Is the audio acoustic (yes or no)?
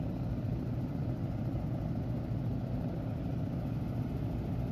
yes